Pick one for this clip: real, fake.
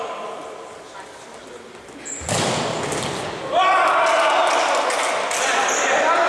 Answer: real